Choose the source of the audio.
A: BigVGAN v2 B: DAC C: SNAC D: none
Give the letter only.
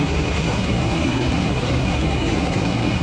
C